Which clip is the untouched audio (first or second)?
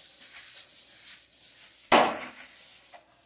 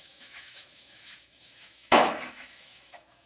first